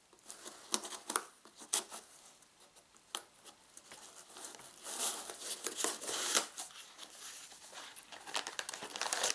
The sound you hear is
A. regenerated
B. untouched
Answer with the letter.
B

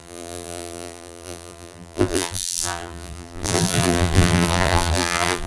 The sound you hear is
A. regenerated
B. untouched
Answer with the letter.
A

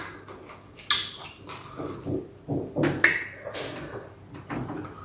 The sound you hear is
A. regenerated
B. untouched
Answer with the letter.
B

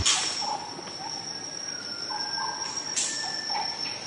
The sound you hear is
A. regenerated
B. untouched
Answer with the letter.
B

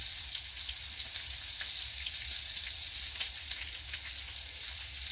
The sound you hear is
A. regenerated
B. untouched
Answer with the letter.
B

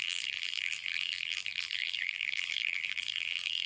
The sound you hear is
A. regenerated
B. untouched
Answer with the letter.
A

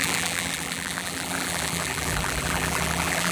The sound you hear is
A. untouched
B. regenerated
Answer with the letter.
B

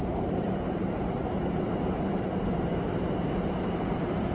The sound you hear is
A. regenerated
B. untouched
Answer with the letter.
A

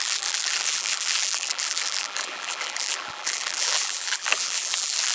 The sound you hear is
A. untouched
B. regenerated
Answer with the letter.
B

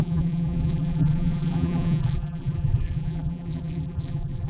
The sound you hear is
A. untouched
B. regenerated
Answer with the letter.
B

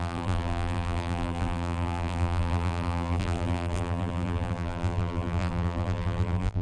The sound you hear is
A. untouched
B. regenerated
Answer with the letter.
B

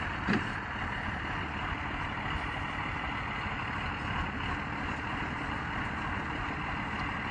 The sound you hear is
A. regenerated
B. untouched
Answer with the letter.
B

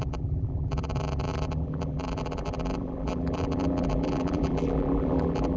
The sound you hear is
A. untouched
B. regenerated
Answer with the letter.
B